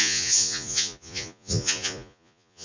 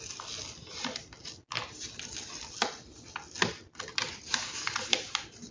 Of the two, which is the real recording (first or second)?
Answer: second